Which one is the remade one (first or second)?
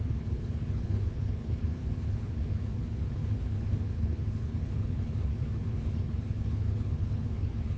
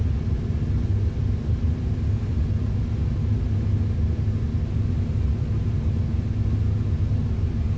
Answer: first